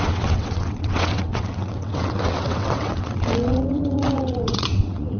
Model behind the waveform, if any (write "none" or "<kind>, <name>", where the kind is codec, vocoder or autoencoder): vocoder, WaveNeXt